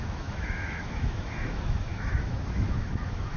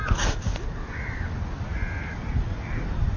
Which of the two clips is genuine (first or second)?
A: second